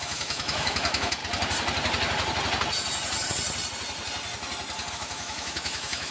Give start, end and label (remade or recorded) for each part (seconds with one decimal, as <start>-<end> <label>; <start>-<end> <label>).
0.0-1.2 remade; 1.2-4.9 recorded; 4.9-6.1 remade